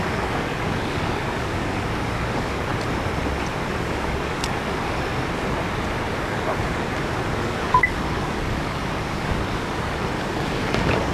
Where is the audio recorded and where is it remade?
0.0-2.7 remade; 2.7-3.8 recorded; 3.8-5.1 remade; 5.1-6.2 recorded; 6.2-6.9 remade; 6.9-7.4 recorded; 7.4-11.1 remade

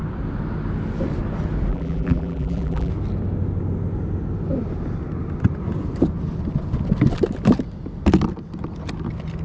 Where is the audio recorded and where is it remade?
0.0-1.7 recorded; 1.7-2.9 remade; 2.9-9.4 recorded

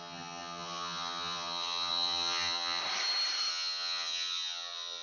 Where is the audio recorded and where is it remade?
0.0-2.8 remade; 2.8-3.5 recorded; 3.5-5.0 remade